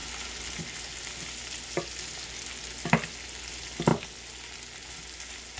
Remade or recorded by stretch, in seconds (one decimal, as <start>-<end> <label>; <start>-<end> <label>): 0.0-5.6 recorded